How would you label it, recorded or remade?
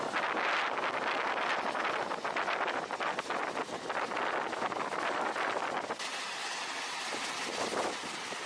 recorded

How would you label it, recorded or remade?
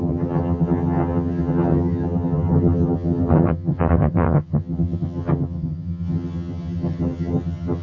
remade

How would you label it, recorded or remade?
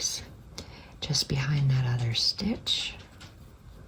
recorded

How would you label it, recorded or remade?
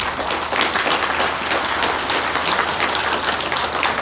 recorded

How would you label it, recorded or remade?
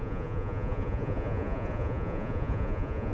remade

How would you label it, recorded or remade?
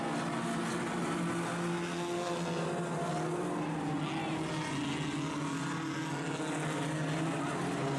recorded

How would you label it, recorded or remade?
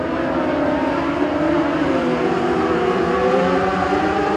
remade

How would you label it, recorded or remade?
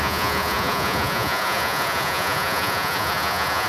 remade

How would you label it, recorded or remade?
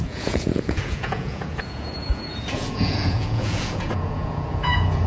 remade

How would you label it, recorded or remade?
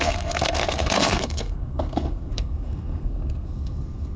remade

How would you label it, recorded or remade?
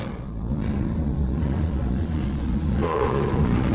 remade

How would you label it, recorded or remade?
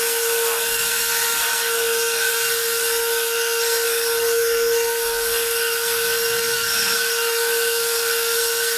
remade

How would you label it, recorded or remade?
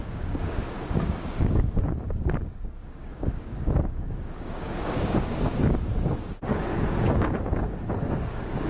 remade